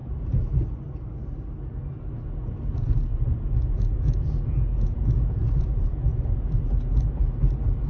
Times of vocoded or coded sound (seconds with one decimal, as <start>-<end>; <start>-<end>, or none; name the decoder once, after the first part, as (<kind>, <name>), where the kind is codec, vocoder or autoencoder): 0.0-0.6 (vocoder, Vocos); 3.1-6.6